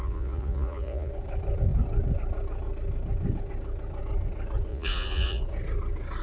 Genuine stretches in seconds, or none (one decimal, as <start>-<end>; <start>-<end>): 1.1-4.7; 5.4-6.2